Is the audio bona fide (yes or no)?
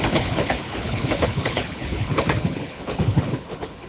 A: no